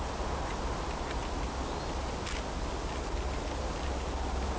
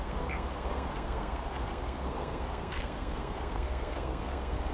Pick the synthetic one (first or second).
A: second